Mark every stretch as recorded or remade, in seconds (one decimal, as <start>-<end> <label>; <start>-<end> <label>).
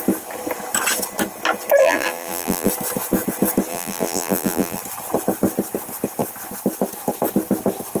0.0-1.8 recorded; 1.8-2.7 remade; 2.7-3.7 recorded; 3.7-4.8 remade; 4.8-8.0 recorded